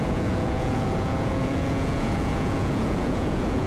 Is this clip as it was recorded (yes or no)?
no